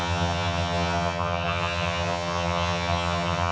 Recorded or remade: remade